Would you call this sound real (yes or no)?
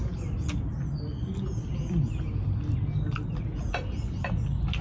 yes